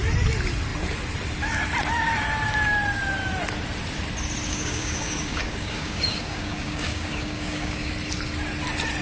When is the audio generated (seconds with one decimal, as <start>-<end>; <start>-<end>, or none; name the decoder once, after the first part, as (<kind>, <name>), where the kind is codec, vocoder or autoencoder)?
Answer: 4.5-7.9 (codec, DAC)

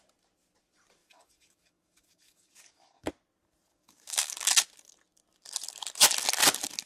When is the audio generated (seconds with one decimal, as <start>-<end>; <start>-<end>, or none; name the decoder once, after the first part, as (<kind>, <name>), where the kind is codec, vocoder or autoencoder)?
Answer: 1.0-3.1 (codec, DAC); 3.7-4.5

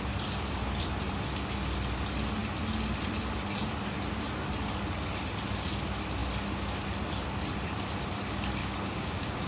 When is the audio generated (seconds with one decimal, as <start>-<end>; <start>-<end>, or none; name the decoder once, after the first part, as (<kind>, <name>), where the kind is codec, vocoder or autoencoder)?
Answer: 8.6-9.5 (codec, DAC)